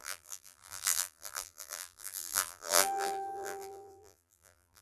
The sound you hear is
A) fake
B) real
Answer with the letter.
A